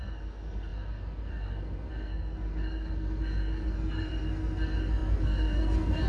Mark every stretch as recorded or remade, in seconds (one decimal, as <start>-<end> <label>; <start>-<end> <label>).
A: 0.0-6.1 remade